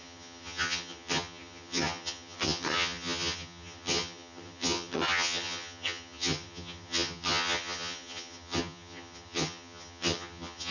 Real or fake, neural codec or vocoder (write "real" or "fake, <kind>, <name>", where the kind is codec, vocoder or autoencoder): fake, vocoder, HiFi-GAN